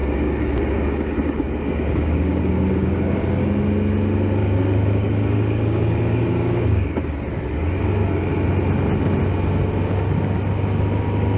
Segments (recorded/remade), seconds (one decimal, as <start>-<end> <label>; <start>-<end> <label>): 0.0-3.4 remade; 3.4-4.4 recorded; 4.4-7.1 remade; 7.1-11.4 recorded

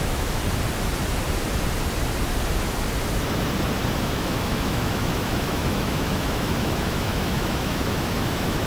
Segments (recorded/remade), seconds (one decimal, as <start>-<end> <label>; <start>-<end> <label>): 0.0-0.4 remade; 0.4-4.0 recorded; 4.0-8.7 remade